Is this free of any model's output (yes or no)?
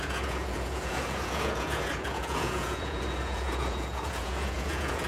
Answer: no